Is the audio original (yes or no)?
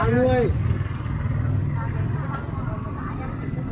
yes